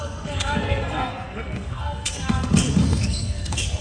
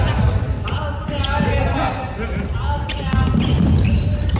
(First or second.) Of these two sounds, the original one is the second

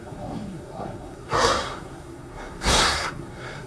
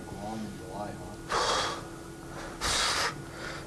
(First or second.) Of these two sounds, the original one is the second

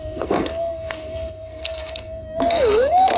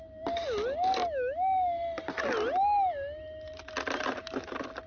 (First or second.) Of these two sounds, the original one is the second